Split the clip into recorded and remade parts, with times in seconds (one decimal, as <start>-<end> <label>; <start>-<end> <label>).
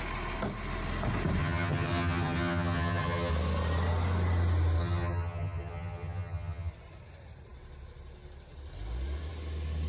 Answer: 0.0-1.4 recorded; 1.4-3.3 remade; 3.3-4.8 recorded; 4.8-6.7 remade; 6.7-9.9 recorded